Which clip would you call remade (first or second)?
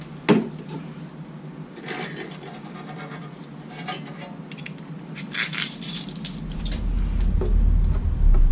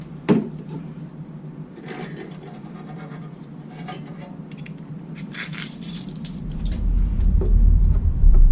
second